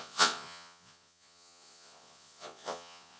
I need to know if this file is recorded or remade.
remade